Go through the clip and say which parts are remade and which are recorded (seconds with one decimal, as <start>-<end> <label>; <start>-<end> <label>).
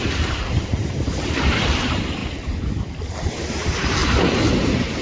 0.0-2.2 remade; 2.2-3.3 recorded; 3.3-4.0 remade; 4.0-4.6 recorded; 4.6-5.0 remade